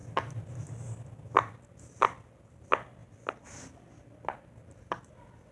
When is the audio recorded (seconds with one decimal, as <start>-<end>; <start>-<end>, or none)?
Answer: 0.0-5.5